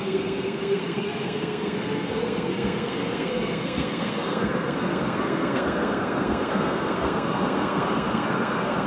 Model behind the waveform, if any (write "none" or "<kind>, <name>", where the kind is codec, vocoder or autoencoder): codec, SNAC